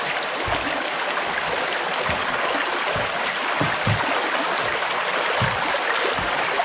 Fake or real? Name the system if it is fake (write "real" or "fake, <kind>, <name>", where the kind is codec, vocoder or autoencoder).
real